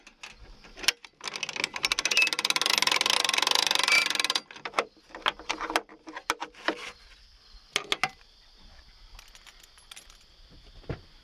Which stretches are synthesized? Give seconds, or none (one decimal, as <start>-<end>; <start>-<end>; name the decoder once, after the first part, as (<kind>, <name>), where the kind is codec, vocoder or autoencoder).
none